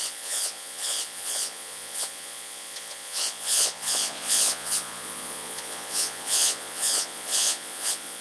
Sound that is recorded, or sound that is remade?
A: remade